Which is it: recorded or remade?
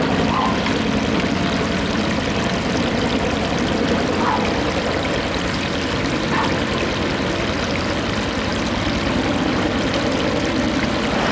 recorded